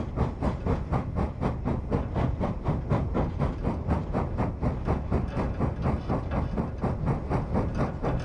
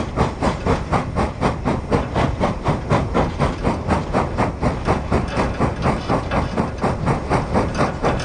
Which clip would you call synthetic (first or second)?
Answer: second